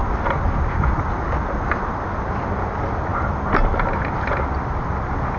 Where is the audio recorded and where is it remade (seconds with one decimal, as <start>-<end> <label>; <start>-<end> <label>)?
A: 0.0-5.4 recorded